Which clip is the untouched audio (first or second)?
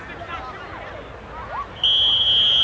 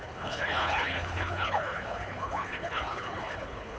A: first